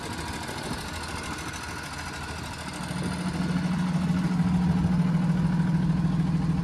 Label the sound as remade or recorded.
recorded